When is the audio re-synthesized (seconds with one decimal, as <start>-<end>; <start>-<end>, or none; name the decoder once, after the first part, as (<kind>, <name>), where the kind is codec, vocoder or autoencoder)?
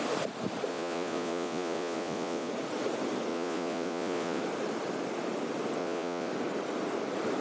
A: 0.7-2.5 (vocoder, Vocos); 3.3-4.4; 5.8-6.3